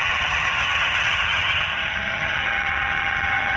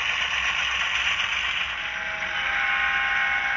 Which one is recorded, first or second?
second